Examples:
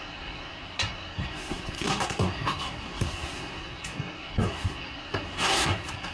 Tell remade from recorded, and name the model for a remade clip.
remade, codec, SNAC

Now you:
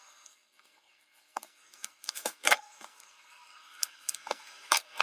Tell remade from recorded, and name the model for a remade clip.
remade, codec, SNAC